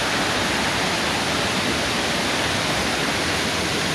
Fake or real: real